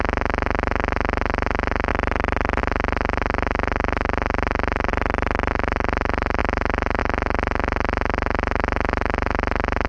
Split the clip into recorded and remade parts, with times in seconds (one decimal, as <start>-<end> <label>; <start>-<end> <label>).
0.0-1.9 remade; 1.9-2.6 recorded; 2.6-4.9 remade; 4.9-5.5 recorded; 5.5-9.9 remade